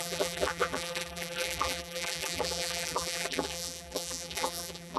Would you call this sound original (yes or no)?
no